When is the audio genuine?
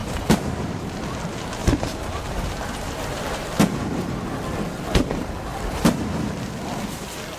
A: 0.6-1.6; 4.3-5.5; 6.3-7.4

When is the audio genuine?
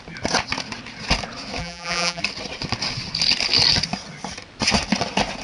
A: 0.0-1.6; 2.2-5.4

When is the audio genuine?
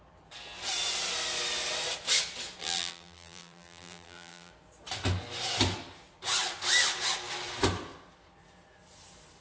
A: 0.0-2.6; 4.5-9.4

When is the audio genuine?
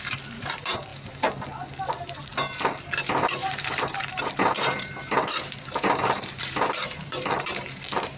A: 0.9-1.8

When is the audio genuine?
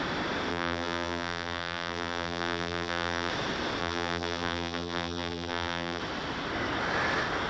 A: 0.0-0.5; 3.3-3.8; 6.0-7.5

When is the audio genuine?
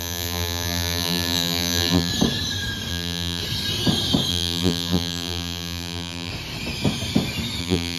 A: 2.1-2.9; 3.4-4.3; 6.3-7.6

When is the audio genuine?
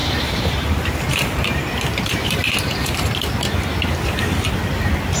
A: 3.1-5.2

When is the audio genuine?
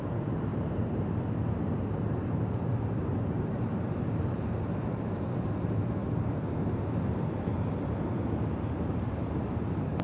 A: 6.0-6.8